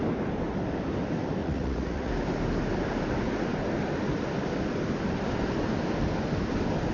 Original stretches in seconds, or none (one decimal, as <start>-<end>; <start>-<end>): 0.0-1.4; 2.1-6.9

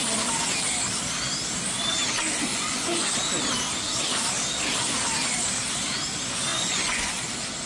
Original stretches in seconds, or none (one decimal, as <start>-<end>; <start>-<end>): 0.0-2.5; 3.1-6.5; 7.1-7.7

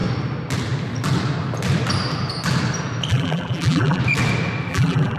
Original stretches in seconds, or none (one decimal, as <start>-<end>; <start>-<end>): 0.0-3.1; 4.0-4.7

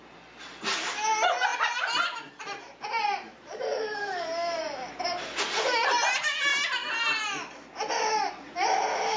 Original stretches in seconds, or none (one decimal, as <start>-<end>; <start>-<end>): 0.0-1.5; 5.0-9.2

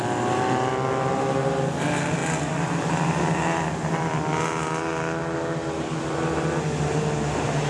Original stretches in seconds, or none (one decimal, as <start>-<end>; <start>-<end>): 0.0-7.7

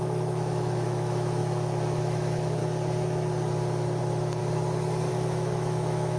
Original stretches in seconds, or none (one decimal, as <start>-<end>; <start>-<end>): 1.4-2.0; 2.6-4.0; 4.4-5.1

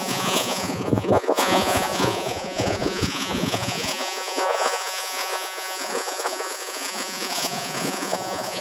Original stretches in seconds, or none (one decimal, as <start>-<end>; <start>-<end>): none